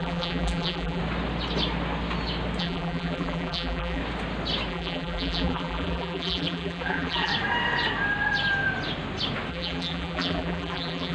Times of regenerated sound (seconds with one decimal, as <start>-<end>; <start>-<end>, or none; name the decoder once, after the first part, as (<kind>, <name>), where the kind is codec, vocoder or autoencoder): 0.0-1.0 (vocoder, BigVGAN v2); 2.6-4.0; 4.7-7.3; 9.5-11.1